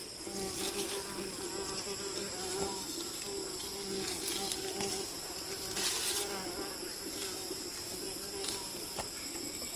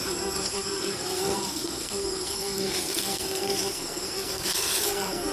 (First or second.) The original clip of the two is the first